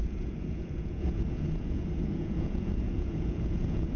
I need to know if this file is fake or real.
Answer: fake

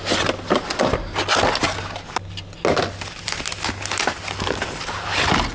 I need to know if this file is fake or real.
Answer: real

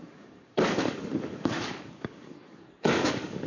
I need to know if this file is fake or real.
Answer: fake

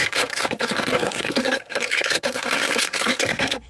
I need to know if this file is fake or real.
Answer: fake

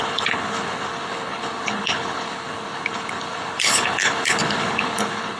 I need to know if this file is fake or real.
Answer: fake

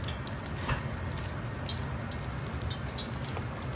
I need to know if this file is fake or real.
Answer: real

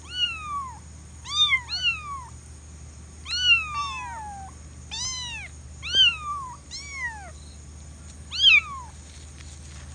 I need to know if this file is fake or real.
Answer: real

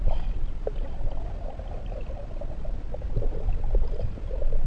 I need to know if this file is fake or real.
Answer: real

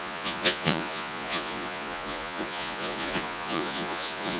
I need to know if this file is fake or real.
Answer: fake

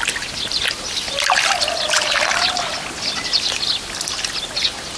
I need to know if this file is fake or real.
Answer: real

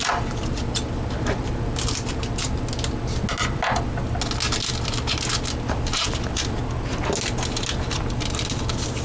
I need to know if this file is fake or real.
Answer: real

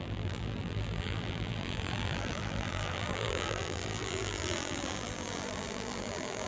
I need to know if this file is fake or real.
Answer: fake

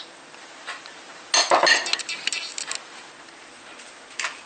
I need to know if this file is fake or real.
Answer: real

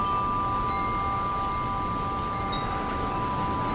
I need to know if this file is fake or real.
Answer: real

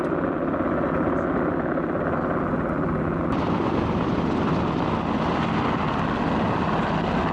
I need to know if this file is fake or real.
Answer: real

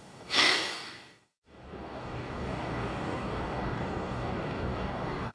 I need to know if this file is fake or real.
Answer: fake